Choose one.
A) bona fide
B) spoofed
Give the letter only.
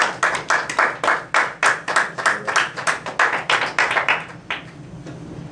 A